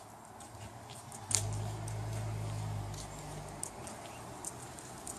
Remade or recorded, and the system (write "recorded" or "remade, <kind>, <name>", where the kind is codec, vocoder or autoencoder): recorded